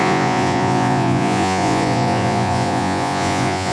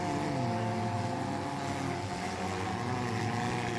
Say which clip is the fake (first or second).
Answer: first